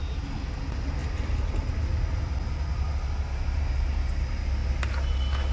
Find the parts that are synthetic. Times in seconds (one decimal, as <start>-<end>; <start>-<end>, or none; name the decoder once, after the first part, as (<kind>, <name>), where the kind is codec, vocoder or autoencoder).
none